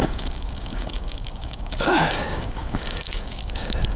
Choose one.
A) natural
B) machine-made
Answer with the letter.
B